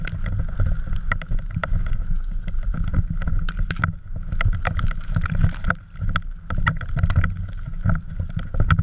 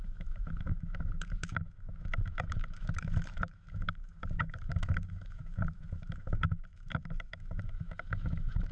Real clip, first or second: first